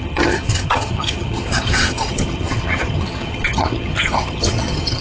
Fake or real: fake